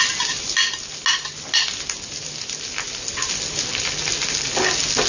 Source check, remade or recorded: recorded